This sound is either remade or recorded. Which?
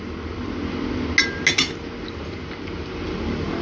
recorded